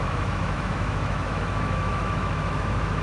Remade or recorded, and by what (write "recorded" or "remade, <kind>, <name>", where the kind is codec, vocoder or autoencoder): remade, autoencoder, DAC-VAE